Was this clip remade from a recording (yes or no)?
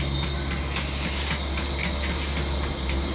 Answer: no